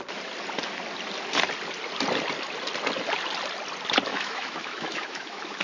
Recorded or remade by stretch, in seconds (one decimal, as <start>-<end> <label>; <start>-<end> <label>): 0.0-4.1 recorded; 4.1-5.6 remade